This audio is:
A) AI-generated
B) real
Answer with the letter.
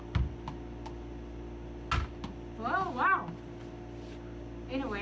B